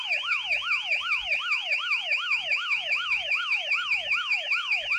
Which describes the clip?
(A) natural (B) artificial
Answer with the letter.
B